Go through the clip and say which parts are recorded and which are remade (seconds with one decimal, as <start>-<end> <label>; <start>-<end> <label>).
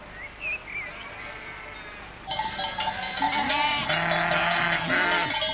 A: 0.0-5.5 recorded